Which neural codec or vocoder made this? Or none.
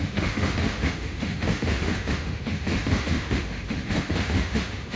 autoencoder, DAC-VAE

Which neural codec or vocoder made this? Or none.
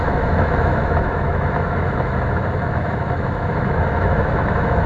autoencoder, DAC-VAE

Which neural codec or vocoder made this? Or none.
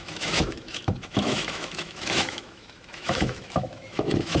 autoencoder, DAC-VAE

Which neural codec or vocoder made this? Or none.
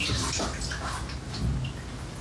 none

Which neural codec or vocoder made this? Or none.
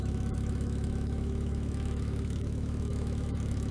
autoencoder, DAC-VAE